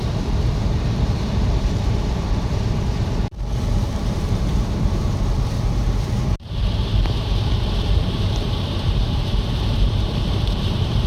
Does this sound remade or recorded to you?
remade